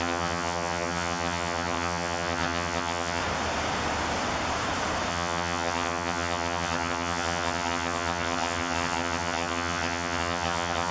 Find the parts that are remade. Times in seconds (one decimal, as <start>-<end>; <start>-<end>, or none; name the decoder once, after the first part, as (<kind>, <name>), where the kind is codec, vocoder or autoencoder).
0.0-3.2 (vocoder, HiFi-GAN); 5.1-10.9